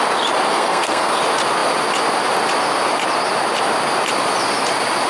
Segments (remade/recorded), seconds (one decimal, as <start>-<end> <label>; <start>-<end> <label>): 0.0-0.5 recorded; 0.5-1.2 remade; 1.2-5.1 recorded